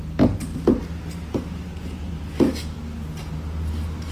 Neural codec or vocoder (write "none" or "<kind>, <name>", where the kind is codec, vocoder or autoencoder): none